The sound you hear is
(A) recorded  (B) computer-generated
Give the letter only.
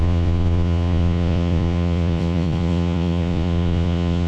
B